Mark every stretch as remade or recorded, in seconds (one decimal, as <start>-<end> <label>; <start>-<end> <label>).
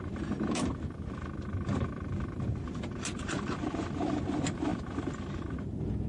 0.0-6.1 remade